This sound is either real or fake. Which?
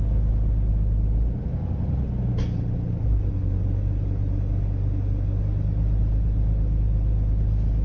real